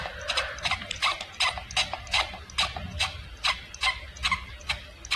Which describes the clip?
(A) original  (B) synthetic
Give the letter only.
A